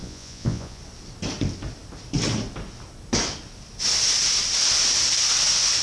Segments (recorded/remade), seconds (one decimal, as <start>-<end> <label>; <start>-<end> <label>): 0.0-0.8 remade; 0.8-5.8 recorded